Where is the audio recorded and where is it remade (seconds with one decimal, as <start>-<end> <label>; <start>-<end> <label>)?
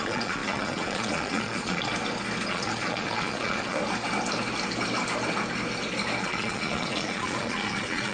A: 0.0-1.9 remade; 1.9-2.5 recorded; 2.5-3.8 remade; 3.8-6.2 recorded; 6.2-8.1 remade